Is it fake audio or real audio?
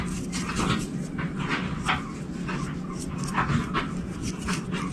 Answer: real